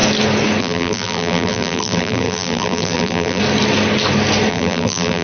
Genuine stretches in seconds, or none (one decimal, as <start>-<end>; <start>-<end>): 0.0-0.6; 3.4-4.5